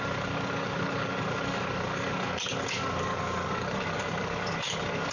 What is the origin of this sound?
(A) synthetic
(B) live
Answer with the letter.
A